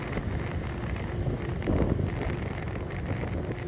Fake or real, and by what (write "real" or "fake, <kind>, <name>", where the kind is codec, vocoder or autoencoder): real